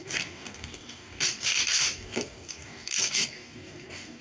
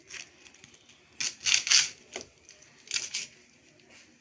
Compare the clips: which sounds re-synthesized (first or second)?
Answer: first